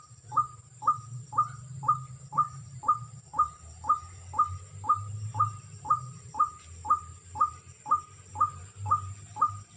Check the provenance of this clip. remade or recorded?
remade